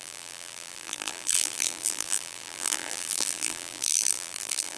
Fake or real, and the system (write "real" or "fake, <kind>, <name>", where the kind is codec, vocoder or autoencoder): fake, vocoder, BigVGAN v2